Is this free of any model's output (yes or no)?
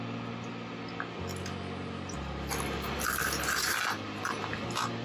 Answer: yes